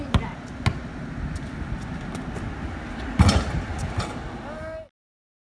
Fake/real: real